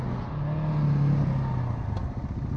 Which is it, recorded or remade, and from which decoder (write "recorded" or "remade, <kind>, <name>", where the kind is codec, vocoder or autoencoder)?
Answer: recorded